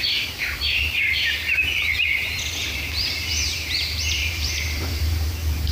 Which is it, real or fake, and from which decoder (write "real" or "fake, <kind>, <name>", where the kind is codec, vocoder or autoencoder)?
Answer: fake, vocoder, BigVGAN v2